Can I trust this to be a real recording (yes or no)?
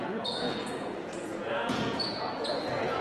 no